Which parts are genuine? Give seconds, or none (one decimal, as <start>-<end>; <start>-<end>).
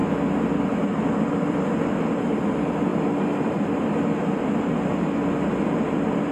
0.0-6.3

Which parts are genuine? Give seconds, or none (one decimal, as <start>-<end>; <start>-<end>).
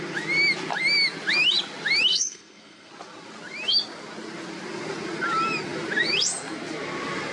0.0-2.1; 2.9-7.3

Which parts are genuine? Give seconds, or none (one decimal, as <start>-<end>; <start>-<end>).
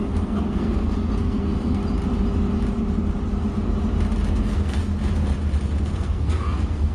1.8-4.3; 4.9-5.8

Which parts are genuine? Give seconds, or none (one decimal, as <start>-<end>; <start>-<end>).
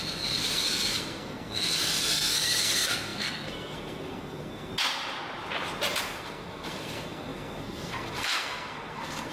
4.7-6.0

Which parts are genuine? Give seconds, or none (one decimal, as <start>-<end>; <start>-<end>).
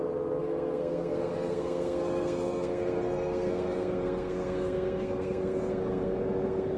none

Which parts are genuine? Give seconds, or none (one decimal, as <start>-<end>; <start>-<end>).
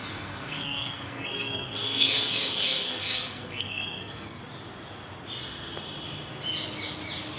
4.4-7.4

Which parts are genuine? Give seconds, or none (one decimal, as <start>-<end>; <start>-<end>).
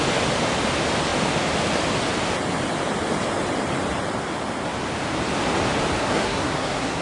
0.0-6.0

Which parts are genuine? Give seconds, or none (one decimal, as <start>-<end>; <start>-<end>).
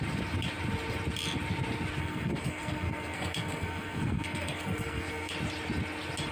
0.0-2.0; 5.3-6.3